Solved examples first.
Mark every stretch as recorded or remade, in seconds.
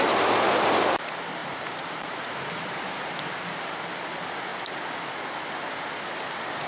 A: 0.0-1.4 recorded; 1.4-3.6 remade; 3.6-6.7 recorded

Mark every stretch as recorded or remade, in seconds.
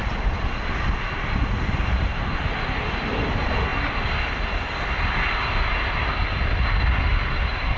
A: 0.0-7.1 recorded; 7.1-7.8 remade